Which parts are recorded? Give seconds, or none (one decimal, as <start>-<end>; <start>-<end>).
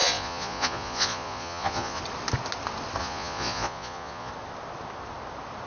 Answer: 2.0-3.0; 4.3-5.7